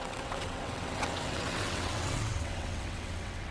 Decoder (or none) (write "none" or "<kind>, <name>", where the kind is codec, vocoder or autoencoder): vocoder, WaveNeXt